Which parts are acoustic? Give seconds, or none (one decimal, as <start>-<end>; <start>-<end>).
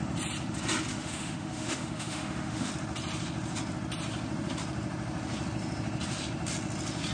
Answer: 0.0-0.9; 2.7-7.1